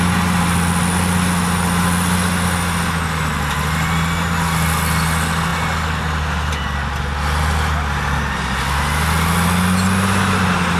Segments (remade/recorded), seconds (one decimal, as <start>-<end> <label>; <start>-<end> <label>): 0.0-10.8 recorded